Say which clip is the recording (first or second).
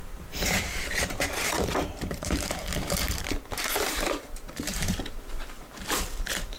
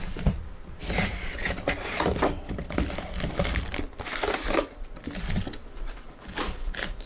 second